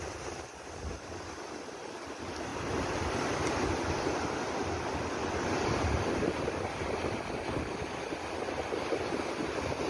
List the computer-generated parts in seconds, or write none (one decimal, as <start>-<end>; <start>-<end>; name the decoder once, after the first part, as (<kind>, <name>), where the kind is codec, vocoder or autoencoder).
none